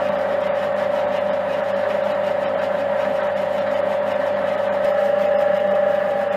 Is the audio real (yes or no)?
no